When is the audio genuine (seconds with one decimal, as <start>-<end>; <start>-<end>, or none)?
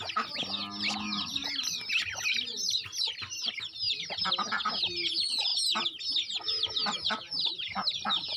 0.0-1.4; 4.3-8.4